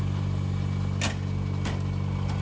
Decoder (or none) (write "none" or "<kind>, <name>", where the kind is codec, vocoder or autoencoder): none